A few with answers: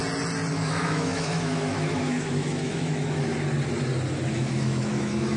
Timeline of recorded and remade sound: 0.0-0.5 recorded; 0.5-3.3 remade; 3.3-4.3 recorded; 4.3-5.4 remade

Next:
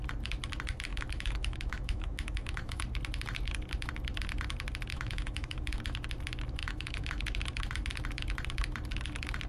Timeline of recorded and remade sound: 0.0-0.9 recorded; 0.9-2.8 remade; 2.8-4.9 recorded; 4.9-5.8 remade; 5.8-6.6 recorded; 6.6-7.2 remade; 7.2-9.5 recorded

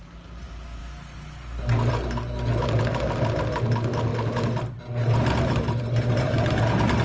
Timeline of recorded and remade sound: 0.0-7.0 recorded

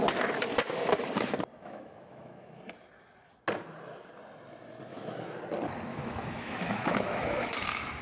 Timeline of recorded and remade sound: 0.0-1.5 recorded; 1.5-2.6 remade; 2.6-4.9 recorded; 4.9-5.4 remade; 5.4-5.9 recorded; 5.9-8.0 remade